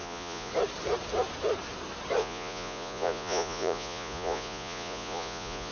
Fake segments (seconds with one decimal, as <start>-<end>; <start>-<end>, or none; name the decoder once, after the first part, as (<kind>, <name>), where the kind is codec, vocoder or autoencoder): 0.0-0.5 (vocoder, Vocos); 2.2-5.7